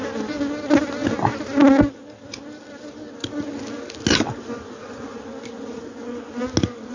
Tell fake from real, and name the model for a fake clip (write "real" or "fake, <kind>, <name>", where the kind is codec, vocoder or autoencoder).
real